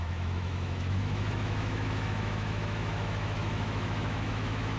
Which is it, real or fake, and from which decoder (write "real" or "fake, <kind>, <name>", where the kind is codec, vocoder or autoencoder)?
fake, autoencoder, DAC-VAE